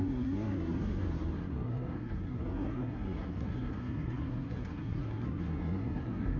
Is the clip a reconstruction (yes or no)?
yes